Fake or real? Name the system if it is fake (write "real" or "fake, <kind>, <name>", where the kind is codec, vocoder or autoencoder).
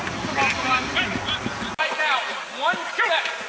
real